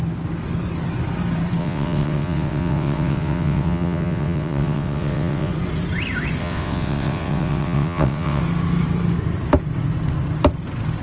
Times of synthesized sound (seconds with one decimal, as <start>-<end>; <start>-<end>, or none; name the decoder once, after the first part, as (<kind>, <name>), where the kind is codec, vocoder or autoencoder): 1.6-5.5 (vocoder, WaveNeXt); 6.4-8.4